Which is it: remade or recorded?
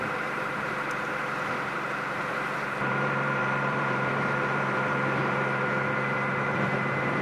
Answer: remade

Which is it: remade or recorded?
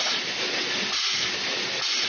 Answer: remade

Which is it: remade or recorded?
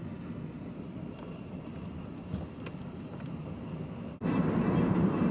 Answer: recorded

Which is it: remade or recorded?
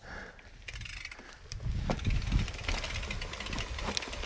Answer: recorded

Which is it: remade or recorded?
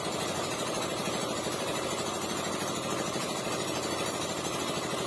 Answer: remade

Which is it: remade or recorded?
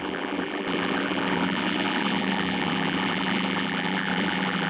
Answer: remade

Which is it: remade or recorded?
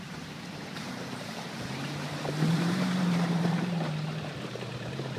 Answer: remade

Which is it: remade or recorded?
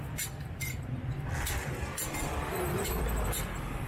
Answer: recorded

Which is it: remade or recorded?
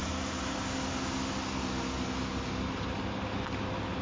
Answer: recorded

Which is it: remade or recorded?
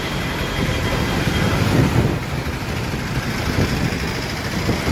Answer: recorded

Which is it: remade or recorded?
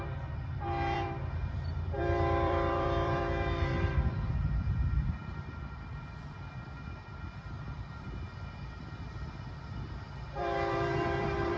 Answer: remade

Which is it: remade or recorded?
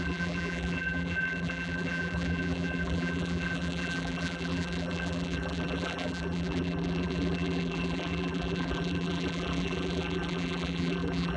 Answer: remade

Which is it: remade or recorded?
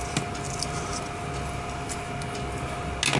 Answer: recorded